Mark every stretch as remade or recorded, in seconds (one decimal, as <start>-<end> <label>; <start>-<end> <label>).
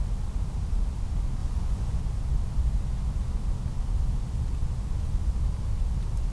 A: 0.0-1.4 recorded; 1.4-2.0 remade; 2.0-6.3 recorded